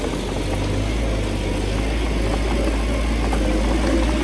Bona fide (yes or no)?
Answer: yes